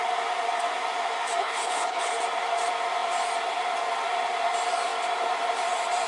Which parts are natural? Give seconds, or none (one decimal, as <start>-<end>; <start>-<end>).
0.0-1.4; 2.1-6.1